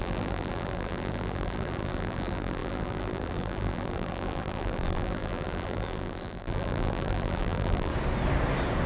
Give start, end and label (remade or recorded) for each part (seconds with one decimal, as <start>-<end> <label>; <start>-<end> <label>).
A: 0.0-7.9 remade; 7.9-8.9 recorded